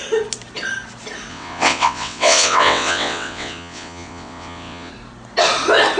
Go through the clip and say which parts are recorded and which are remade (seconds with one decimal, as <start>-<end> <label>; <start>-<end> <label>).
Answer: 0.0-1.3 recorded; 1.3-4.9 remade; 4.9-6.0 recorded